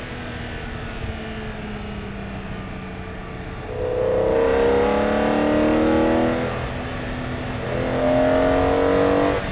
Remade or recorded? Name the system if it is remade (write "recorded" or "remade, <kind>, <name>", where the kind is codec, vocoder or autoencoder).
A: recorded